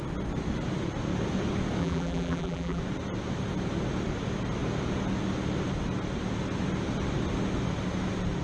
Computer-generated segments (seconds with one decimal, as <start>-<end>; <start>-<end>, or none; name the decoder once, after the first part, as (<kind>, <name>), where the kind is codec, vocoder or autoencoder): 1.8-2.8 (vocoder, BigVGAN v2)